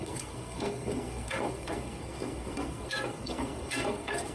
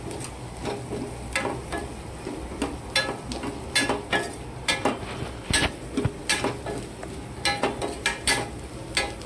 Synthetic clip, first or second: first